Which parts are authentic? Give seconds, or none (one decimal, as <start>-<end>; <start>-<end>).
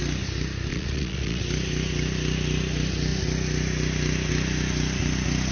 0.0-0.7; 1.4-5.5